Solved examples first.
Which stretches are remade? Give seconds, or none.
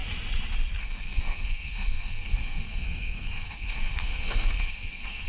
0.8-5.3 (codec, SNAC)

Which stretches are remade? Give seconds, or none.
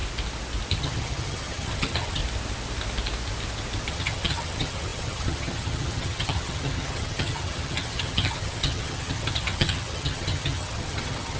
0.8-2.2 (vocoder, HiFi-GAN); 3.9-11.4